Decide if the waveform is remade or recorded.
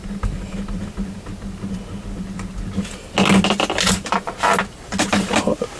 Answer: recorded